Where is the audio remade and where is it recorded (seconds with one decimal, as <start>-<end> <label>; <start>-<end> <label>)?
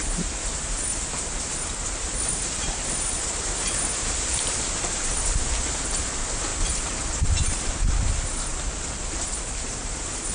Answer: 0.0-8.5 remade; 8.5-9.2 recorded; 9.2-10.3 remade